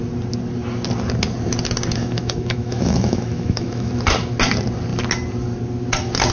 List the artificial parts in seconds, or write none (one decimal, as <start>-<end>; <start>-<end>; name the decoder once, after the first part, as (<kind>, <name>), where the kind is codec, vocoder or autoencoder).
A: 2.0-3.9 (autoencoder, DAC-VAE)